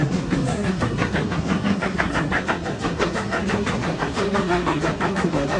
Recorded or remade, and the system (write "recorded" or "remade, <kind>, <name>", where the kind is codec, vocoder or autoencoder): remade, codec, SNAC